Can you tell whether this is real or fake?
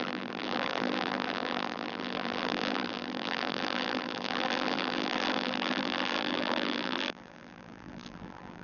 fake